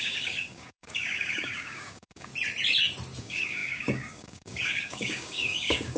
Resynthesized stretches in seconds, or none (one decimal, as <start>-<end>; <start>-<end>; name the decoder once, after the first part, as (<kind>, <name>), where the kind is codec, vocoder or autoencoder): 0.0-2.3 (codec, DAC); 3.2-6.0